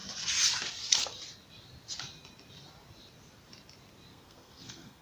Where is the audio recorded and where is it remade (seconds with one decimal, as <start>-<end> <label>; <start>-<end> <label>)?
0.0-4.1 recorded; 4.1-5.0 remade